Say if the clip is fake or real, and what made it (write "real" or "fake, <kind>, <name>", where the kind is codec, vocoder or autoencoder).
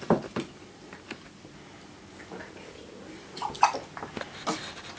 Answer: real